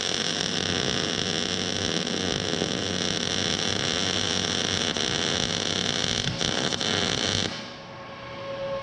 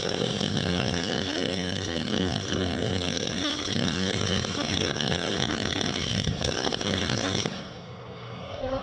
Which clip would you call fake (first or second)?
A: second